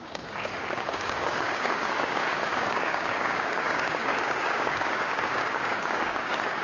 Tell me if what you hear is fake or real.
fake